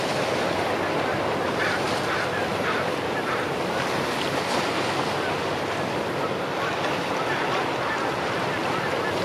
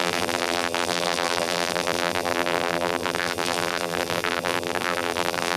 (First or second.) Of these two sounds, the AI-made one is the second